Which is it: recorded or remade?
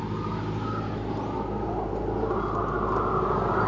recorded